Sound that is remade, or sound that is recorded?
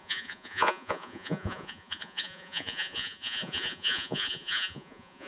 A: remade